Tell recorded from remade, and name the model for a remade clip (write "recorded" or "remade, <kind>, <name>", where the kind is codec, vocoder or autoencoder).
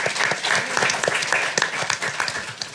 recorded